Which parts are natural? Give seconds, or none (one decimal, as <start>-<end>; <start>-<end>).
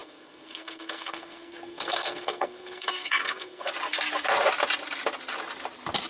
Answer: 3.7-6.1